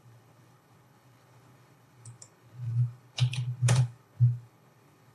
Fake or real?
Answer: fake